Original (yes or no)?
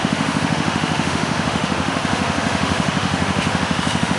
no